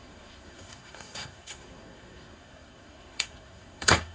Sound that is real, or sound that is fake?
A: fake